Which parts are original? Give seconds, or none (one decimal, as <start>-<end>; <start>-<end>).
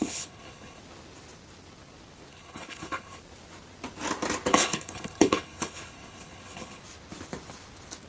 0.8-2.3; 3.2-4.5; 6.8-8.1